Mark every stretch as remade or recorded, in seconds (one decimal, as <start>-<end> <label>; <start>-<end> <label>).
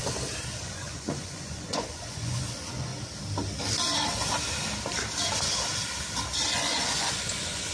0.0-0.6 recorded; 0.6-2.9 remade; 2.9-6.5 recorded; 6.5-7.7 remade